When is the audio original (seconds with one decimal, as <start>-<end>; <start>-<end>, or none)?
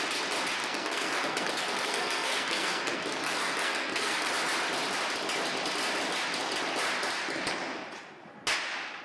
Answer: 0.0-0.6; 4.3-9.0